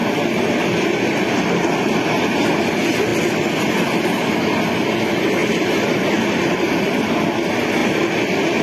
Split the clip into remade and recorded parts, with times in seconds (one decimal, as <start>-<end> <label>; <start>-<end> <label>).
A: 0.0-5.4 recorded; 5.4-7.1 remade; 7.1-8.6 recorded